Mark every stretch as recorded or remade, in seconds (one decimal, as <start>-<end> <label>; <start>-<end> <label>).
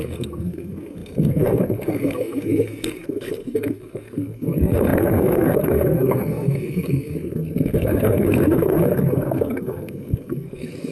0.0-10.9 remade